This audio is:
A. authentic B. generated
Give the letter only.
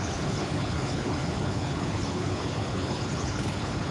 B